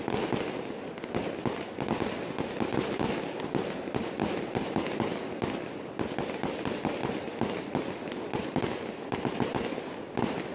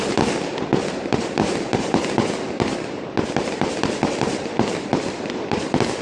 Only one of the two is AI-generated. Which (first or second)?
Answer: second